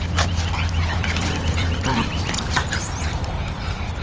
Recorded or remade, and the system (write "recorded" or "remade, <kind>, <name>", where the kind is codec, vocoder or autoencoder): remade, vocoder, BigVGAN v2